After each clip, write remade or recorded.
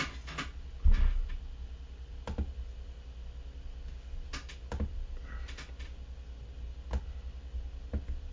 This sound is recorded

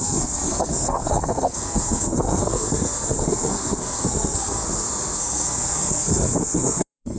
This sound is remade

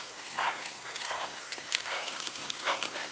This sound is remade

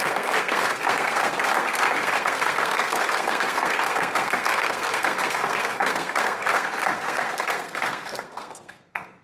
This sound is remade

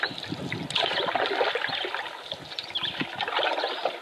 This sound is recorded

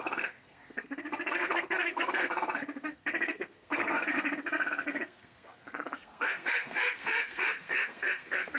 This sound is remade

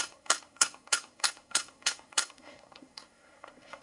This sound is remade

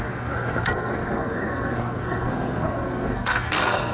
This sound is remade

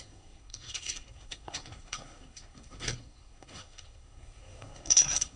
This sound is remade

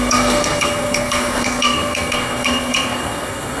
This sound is remade